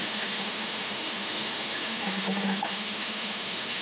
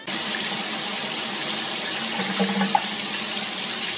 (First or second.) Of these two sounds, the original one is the second